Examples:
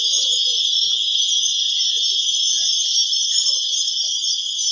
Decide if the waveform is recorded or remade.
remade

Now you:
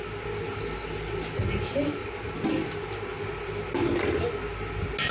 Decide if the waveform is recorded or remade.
recorded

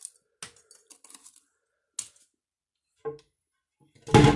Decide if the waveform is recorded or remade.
recorded